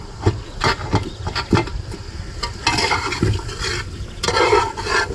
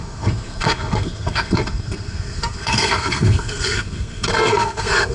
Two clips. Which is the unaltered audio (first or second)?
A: first